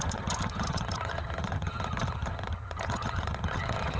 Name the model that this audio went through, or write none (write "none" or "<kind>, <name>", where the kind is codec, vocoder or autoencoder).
vocoder, HiFi-GAN